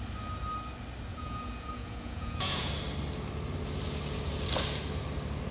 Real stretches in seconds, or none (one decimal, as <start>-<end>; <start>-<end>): 0.0-1.1; 2.7-5.5